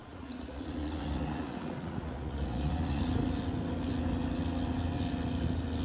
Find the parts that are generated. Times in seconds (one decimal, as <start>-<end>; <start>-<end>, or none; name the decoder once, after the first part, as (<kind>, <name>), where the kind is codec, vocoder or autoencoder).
0.0-3.0 (vocoder, Vocos)